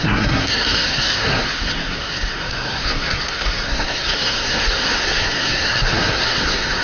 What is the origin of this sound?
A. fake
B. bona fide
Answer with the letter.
A